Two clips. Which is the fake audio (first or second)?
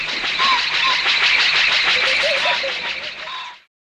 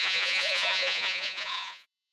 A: second